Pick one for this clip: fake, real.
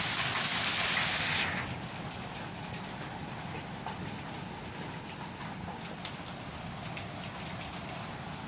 real